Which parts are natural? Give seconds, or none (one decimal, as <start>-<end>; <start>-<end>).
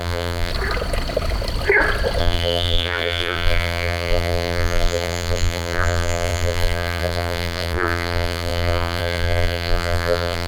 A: 0.5-2.2